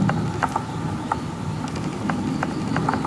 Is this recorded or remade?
recorded